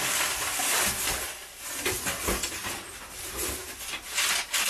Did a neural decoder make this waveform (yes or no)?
no